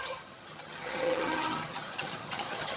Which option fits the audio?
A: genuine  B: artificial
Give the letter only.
B